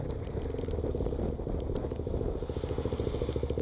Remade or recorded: recorded